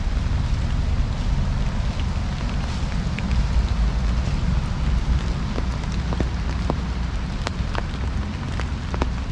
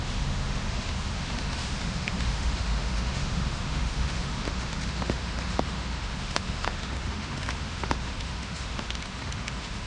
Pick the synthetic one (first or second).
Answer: second